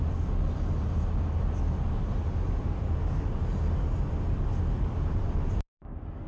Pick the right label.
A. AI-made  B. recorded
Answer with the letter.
B